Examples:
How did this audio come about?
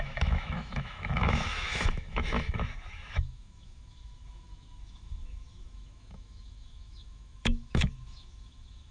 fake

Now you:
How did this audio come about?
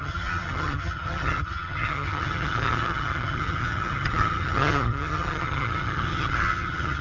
fake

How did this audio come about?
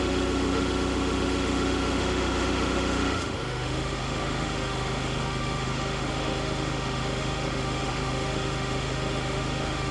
fake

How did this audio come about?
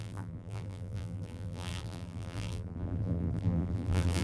fake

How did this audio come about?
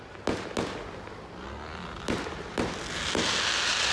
real